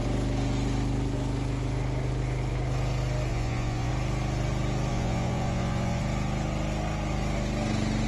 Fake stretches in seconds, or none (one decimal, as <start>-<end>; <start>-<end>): 3.3-3.9; 4.9-6.0